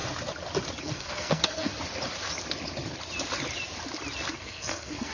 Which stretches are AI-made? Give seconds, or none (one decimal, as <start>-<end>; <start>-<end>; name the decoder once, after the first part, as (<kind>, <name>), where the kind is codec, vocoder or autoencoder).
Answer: 0.8-1.7 (codec, SNAC); 4.3-5.1